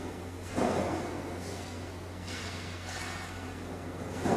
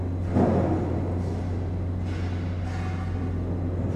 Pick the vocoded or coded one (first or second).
first